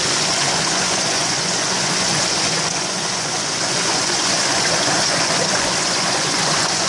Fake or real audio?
fake